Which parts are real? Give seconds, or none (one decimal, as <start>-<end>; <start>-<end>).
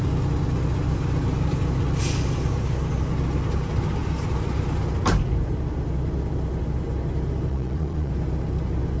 0.0-7.5; 8.1-9.0